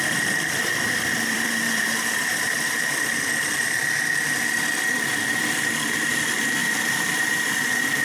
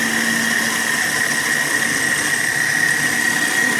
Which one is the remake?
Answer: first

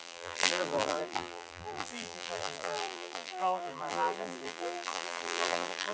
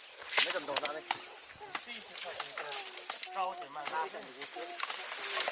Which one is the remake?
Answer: first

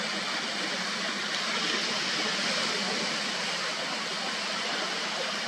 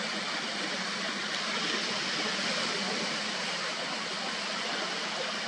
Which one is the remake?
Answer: second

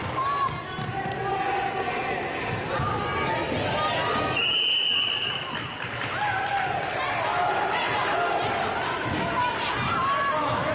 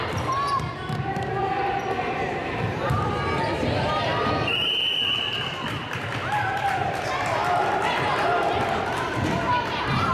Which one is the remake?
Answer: second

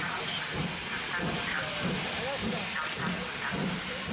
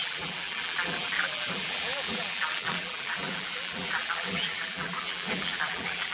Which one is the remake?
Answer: second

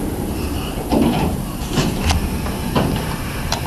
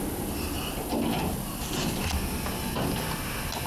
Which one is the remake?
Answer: first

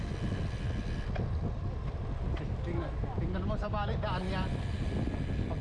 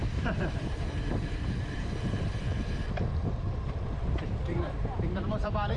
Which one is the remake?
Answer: second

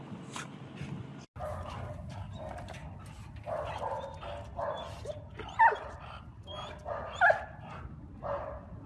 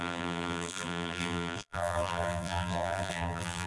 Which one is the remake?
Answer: second